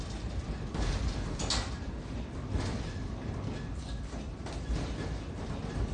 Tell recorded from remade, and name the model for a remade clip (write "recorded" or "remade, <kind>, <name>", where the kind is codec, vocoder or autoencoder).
recorded